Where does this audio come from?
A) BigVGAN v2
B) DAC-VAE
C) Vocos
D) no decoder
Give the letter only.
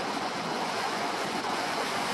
C